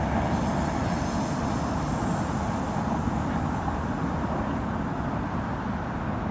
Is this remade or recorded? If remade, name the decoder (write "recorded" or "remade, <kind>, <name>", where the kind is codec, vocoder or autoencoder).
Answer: recorded